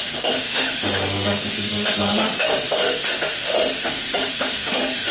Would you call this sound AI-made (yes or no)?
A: yes